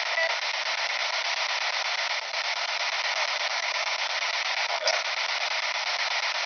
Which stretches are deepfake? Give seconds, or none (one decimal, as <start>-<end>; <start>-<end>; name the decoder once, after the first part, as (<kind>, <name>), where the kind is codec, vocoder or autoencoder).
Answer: 3.5-4.0 (codec, DAC)